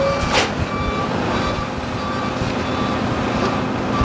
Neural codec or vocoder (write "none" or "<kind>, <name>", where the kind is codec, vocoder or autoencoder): none